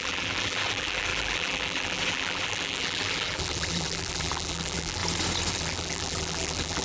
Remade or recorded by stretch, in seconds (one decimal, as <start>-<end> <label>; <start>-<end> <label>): 0.0-5.0 remade; 5.0-5.5 recorded; 5.5-6.8 remade